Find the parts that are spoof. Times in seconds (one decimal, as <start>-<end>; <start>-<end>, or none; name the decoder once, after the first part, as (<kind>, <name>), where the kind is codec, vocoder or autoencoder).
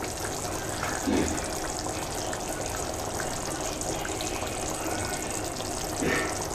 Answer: none